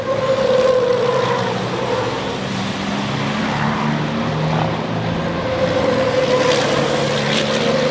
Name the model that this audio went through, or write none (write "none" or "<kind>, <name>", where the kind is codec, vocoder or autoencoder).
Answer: none